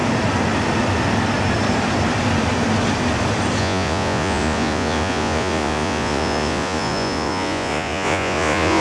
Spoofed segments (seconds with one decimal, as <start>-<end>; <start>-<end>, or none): 3.6-8.8